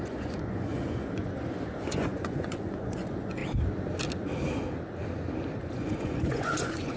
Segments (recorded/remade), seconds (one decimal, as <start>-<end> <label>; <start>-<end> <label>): 0.0-3.4 remade; 3.4-5.6 recorded; 5.6-7.0 remade